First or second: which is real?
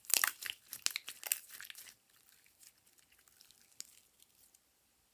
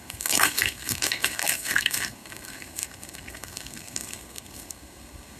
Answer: first